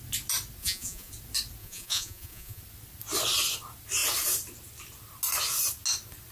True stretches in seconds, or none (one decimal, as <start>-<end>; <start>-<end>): 0.0-0.6; 1.1-1.6; 2.6-6.3